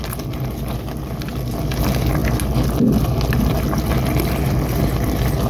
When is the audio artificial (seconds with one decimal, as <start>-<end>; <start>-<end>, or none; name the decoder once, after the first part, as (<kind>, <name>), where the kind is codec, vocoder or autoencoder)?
none